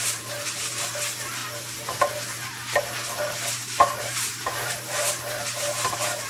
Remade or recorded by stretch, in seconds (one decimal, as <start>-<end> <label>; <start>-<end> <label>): 0.0-1.4 remade; 1.4-4.0 recorded; 4.0-6.3 remade